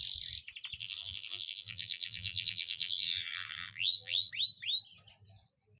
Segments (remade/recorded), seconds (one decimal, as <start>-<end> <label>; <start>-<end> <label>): 0.0-0.8 recorded; 0.8-4.3 remade; 4.3-5.8 recorded